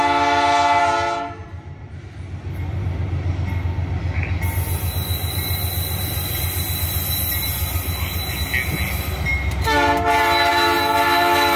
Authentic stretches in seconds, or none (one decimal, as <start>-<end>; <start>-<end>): 0.0-1.4; 3.3-11.6